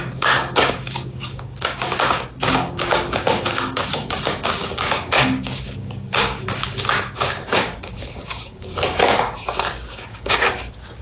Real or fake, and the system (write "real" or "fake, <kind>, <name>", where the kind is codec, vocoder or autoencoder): fake, codec, DAC